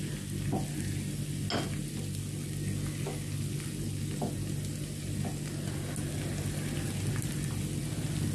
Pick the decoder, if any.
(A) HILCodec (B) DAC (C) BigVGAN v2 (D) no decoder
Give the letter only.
D